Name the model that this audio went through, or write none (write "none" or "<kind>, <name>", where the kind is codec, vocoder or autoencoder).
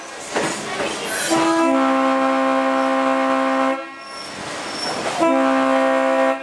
none